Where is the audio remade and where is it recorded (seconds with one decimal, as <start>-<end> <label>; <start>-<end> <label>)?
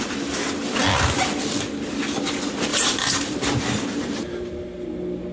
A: 0.0-2.7 recorded; 2.7-4.5 remade; 4.5-5.3 recorded